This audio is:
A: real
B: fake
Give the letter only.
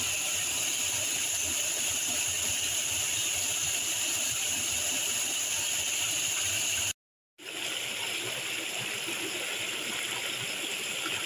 A